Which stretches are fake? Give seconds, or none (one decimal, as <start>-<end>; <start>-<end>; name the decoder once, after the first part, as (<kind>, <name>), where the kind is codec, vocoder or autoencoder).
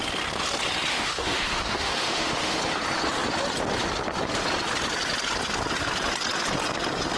0.9-2.6 (autoencoder, DAC-VAE)